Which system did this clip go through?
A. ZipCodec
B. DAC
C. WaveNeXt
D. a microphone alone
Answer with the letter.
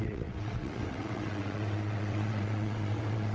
C